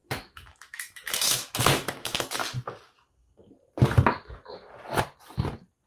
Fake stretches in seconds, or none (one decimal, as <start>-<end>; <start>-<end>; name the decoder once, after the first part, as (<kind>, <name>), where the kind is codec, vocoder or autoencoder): 0.0-2.4 (autoencoder, DAC-VAE)